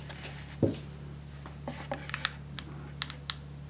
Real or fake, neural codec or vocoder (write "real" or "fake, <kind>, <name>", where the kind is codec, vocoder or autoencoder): real